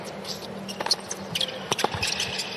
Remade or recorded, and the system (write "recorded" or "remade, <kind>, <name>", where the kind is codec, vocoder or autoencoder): recorded